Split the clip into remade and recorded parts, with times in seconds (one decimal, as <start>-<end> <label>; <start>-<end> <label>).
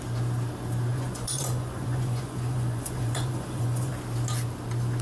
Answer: 0.0-0.9 recorded; 0.9-3.9 remade; 3.9-5.0 recorded